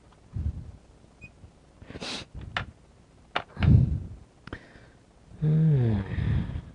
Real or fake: real